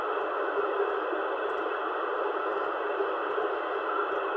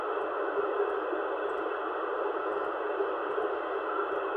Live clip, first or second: second